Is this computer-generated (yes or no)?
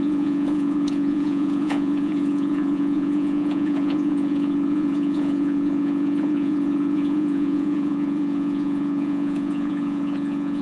yes